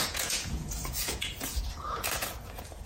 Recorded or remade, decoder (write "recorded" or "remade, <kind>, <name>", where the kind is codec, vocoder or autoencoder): remade, vocoder, Vocos